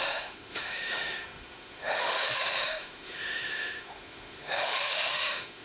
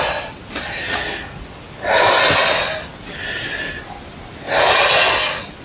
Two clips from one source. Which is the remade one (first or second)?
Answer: first